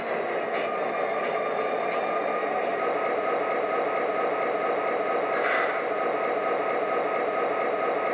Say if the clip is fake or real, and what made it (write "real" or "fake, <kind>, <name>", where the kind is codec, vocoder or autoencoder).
real